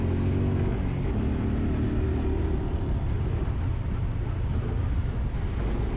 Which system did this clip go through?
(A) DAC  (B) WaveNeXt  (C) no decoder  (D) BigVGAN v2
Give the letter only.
C